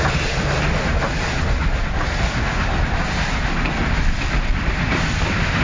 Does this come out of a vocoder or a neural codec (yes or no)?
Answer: no